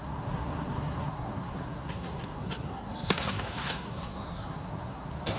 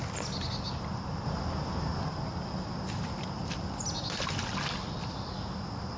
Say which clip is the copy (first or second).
first